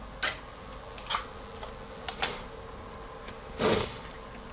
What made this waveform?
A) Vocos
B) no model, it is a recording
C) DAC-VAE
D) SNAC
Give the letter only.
B